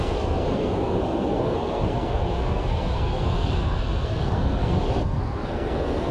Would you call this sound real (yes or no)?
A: no